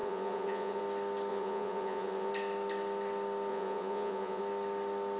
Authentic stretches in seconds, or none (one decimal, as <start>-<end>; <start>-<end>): 0.8-1.3; 2.3-3.5; 4.4-5.2